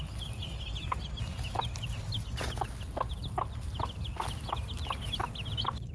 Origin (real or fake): real